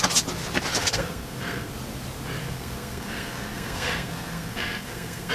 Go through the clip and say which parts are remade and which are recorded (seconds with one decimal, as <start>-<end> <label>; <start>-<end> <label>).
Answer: 0.0-0.8 recorded; 0.8-1.7 remade; 1.7-2.4 recorded; 2.4-5.3 remade